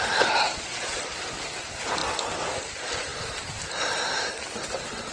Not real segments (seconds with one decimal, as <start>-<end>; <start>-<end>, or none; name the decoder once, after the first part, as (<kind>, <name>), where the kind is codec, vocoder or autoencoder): 0.5-1.0 (vocoder, Vocos)